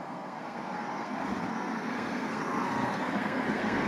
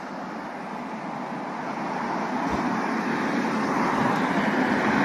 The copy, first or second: first